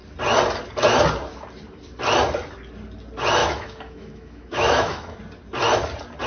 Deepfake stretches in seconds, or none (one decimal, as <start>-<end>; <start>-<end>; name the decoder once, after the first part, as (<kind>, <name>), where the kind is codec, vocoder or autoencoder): 3.4-5.2 (autoencoder, DAC-VAE)